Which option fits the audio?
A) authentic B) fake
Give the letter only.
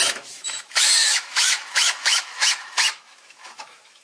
B